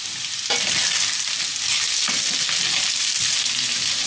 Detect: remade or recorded recorded